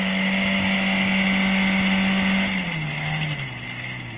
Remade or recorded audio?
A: recorded